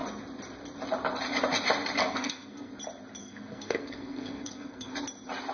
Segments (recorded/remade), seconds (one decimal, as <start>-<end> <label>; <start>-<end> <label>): 0.0-2.0 recorded; 2.0-2.7 remade; 2.7-3.2 recorded; 3.2-4.9 remade; 4.9-5.5 recorded